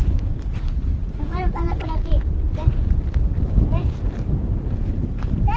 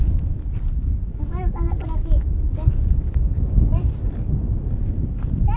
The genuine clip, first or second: second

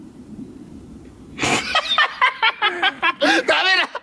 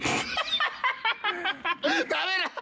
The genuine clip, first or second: second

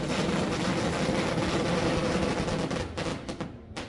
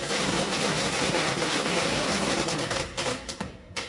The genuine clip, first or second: first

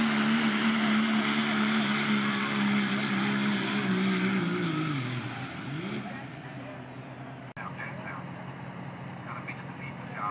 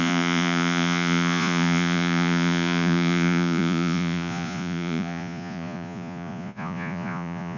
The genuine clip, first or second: first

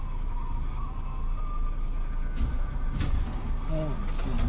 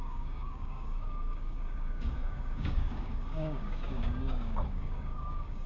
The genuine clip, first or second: first